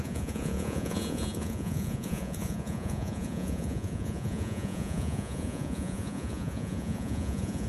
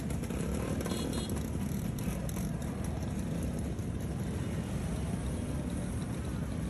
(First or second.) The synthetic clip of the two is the first